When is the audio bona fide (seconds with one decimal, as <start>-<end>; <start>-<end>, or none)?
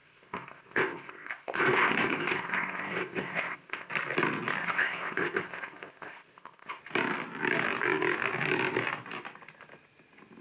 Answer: 3.9-4.6; 6.8-10.4